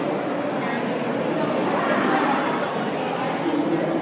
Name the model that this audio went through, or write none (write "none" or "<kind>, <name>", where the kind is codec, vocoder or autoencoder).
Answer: none